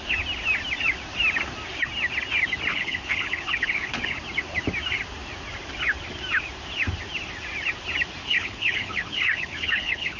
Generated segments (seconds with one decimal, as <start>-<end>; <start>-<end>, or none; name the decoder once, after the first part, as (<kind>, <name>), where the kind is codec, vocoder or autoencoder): 2.7-4.2 (codec, HILCodec); 8.2-10.2